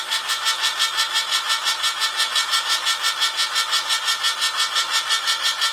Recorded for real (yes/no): yes